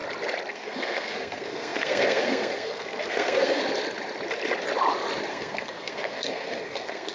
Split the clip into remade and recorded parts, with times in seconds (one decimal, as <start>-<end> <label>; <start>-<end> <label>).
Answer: 0.0-0.5 recorded; 0.5-3.6 remade; 3.6-5.3 recorded; 5.3-7.1 remade